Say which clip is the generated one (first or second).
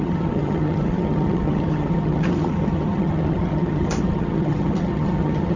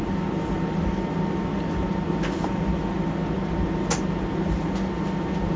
first